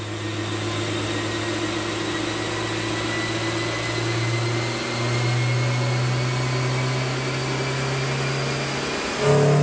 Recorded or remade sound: recorded